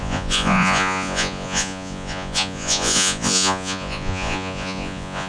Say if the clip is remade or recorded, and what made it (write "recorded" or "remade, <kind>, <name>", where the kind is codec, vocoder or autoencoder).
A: remade, vocoder, Vocos